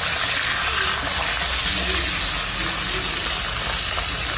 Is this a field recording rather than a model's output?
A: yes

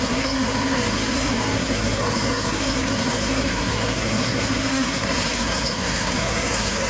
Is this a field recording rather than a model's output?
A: no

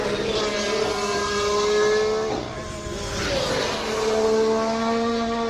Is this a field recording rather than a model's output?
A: yes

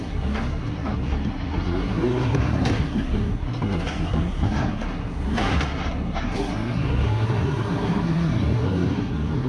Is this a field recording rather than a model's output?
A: no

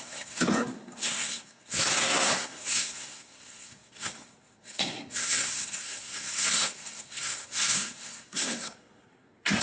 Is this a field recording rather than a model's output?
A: no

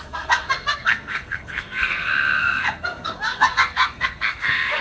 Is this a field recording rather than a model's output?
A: no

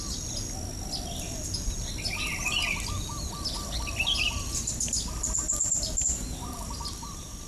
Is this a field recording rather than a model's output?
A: yes